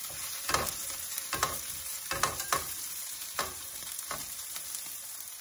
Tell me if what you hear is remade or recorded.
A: remade